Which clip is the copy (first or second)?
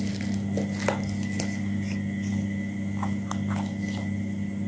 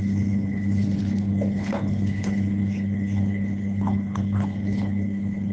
second